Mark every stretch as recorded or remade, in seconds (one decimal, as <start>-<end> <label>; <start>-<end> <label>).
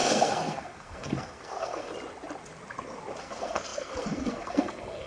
0.0-1.9 remade; 1.9-3.2 recorded; 3.2-5.1 remade